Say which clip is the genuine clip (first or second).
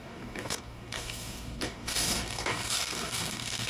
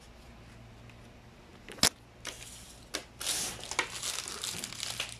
second